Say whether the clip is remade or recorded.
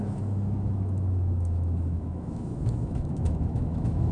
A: remade